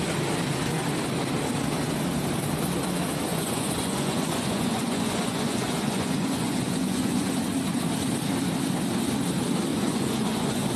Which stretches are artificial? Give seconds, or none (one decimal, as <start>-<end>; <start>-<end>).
3.3-7.3; 9.7-10.8